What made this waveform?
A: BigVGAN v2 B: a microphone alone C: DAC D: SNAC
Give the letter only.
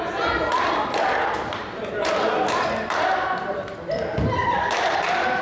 B